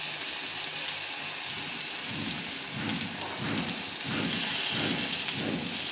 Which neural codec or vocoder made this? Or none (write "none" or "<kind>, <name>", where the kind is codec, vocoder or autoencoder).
none